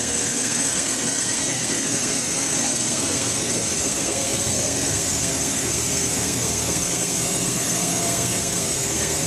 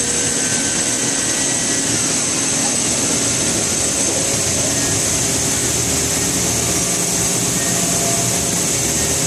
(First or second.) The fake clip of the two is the first